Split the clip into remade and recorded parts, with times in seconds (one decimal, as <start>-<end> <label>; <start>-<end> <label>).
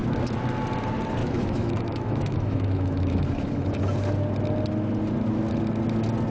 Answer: 0.0-1.2 recorded; 1.2-3.8 remade; 3.8-6.3 recorded